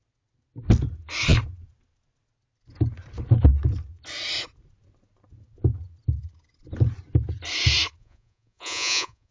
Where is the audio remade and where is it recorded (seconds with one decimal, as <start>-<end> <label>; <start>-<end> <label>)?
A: 0.0-8.0 recorded; 8.0-9.3 remade